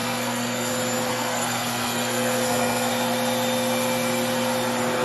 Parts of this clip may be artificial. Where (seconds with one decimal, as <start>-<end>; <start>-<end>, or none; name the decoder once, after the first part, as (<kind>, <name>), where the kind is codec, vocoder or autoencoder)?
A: 0.0-0.7 (codec, SNAC); 1.1-2.9

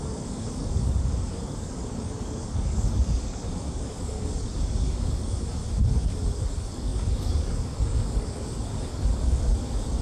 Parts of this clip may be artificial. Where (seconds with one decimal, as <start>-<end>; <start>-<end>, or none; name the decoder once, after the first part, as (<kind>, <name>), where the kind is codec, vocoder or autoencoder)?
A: 0.0-5.6 (codec, DAC); 6.3-10.0

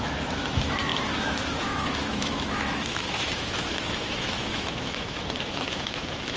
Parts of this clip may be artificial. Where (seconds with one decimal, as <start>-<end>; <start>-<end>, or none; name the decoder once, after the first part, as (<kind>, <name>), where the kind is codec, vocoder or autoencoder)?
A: 0.0-6.4 (autoencoder, DAC-VAE)

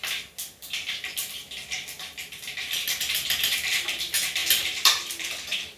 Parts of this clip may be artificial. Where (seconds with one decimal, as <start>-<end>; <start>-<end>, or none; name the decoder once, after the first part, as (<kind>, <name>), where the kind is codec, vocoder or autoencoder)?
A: 4.4-5.3 (vocoder, BigVGAN v2)